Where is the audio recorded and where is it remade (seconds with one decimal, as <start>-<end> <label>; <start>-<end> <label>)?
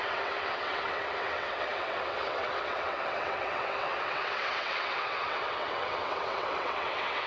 0.0-7.3 remade